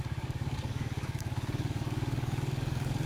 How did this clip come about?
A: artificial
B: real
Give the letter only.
A